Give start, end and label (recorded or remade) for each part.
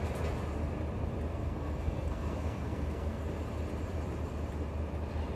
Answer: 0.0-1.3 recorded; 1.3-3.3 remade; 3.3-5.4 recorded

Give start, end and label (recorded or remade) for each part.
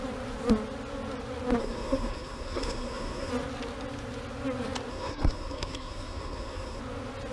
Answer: 0.0-1.6 recorded; 1.6-3.3 remade; 3.3-4.9 recorded; 4.9-6.8 remade; 6.8-7.3 recorded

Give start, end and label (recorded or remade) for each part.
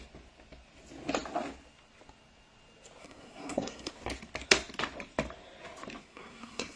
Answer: 0.0-3.0 recorded; 3.0-3.9 remade; 3.9-6.0 recorded; 6.0-6.8 remade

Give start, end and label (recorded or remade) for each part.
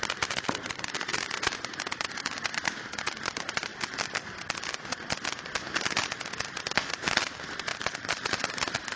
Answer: 0.0-3.7 remade; 3.7-6.2 recorded; 6.2-7.7 remade; 7.7-8.2 recorded; 8.2-9.0 remade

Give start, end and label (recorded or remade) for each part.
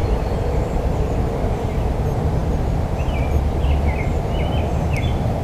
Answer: 0.0-1.8 remade; 1.8-5.4 recorded